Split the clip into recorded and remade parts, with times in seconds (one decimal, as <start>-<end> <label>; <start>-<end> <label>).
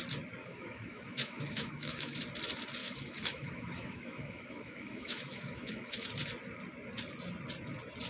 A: 0.0-0.4 recorded; 0.4-2.2 remade; 2.2-2.8 recorded; 2.8-6.1 remade; 6.1-8.1 recorded